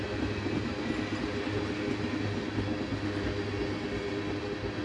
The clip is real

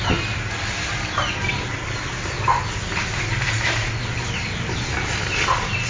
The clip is real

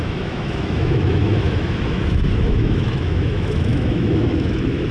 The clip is fake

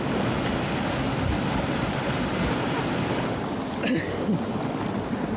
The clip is real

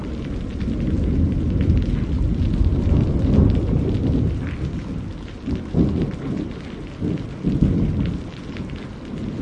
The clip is real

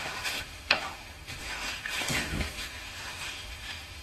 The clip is fake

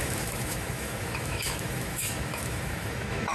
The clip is fake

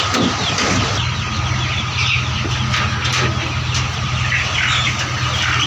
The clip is real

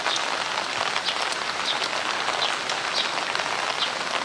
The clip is real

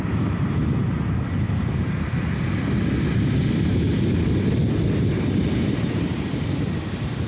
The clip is real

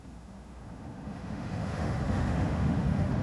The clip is fake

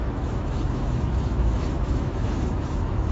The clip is fake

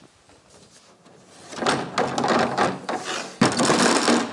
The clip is real